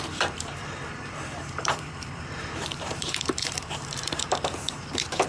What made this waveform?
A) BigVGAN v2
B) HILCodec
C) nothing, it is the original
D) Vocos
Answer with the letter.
A